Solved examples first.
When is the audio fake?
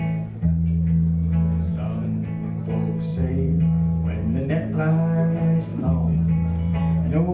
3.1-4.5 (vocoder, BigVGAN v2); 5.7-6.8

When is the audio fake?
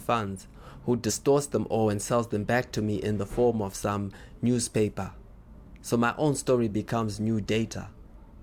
none